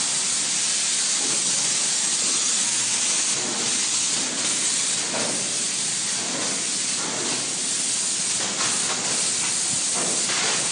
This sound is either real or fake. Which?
real